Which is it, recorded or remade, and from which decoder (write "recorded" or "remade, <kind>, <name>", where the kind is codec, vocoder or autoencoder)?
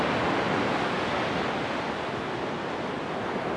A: recorded